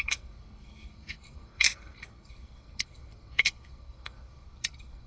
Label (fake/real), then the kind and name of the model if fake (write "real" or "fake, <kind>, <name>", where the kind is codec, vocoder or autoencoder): fake, codec, SNAC